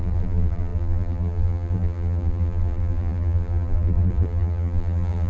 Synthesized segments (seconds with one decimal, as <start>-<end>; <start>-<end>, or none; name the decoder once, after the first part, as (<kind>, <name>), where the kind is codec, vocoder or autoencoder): 0.0-5.3 (vocoder, BigVGAN v2)